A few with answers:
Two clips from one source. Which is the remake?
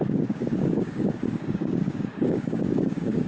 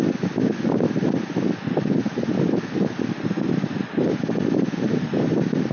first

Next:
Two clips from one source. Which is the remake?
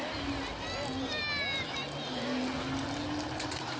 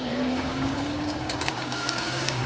second